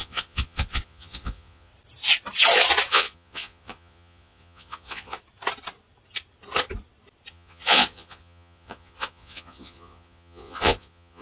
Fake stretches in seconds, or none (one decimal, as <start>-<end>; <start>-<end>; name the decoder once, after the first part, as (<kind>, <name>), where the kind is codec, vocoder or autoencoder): 0.0-1.7 (vocoder, Vocos); 2.9-5.2; 7.3-11.2